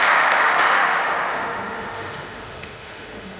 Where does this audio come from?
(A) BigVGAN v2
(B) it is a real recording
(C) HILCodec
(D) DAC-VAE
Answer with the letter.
D